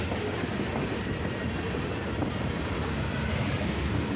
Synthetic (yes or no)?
no